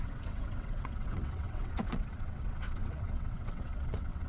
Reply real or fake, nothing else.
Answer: fake